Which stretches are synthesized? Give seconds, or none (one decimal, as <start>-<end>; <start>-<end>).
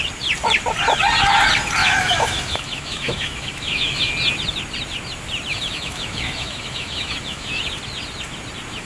1.8-4.1; 5.5-7.6